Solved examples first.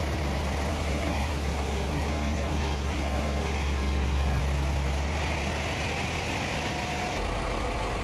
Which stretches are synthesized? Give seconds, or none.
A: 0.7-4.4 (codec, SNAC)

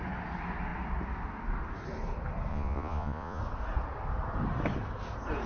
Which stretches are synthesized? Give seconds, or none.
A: 2.5-3.4 (vocoder, Vocos)